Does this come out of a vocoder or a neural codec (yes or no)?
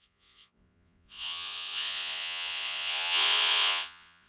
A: yes